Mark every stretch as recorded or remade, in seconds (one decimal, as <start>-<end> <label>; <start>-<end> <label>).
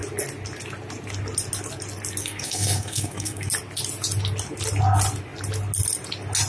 0.0-2.2 recorded; 2.2-3.5 remade; 3.5-6.5 recorded